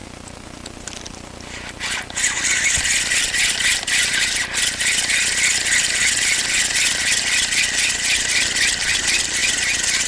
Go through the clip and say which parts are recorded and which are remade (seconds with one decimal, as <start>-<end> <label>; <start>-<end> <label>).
0.0-10.1 recorded